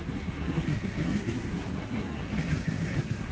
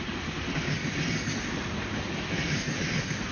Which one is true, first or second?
second